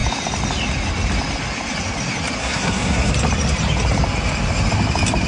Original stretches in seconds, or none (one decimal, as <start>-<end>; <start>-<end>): 0.0-2.4; 3.1-5.3